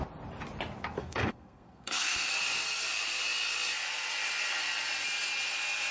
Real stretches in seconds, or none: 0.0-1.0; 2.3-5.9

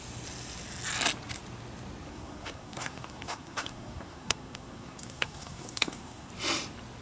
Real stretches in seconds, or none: 0.0-2.1; 6.3-7.0